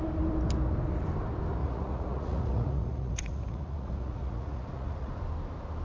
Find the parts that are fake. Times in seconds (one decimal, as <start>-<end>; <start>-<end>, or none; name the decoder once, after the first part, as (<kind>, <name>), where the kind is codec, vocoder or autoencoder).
1.6-5.1 (vocoder, Vocos)